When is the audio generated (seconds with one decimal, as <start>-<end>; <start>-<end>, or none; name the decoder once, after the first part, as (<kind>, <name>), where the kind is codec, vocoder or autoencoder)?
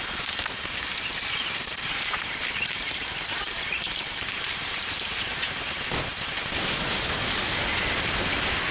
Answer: 0.9-5.5 (vocoder, BigVGAN v2)